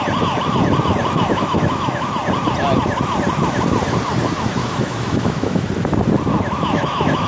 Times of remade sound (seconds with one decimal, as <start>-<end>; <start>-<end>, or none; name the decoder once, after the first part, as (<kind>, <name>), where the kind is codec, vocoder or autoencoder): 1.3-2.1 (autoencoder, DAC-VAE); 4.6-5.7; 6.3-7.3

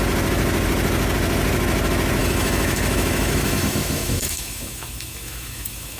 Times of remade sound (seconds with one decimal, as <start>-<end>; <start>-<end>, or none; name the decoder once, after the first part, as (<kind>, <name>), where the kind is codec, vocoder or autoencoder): 2.2-6.0 (autoencoder, DAC-VAE)

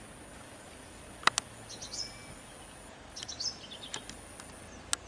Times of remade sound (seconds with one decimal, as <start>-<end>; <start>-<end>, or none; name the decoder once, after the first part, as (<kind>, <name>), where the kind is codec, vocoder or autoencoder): none

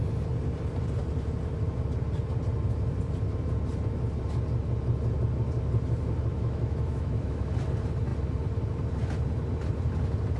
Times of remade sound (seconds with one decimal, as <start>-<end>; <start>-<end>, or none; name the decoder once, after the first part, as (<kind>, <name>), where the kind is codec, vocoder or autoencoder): 6.3-7.5 (autoencoder, DAC-VAE)

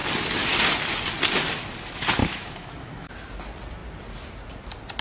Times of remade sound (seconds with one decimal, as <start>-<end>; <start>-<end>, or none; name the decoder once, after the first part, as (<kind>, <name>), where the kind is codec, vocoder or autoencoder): 2.2-3.1 (autoencoder, DAC-VAE)